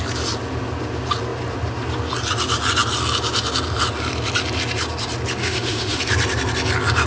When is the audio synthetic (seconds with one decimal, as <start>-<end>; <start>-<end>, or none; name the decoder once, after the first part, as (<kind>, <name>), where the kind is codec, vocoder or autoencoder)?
5.4-6.0 (autoencoder, DAC-VAE)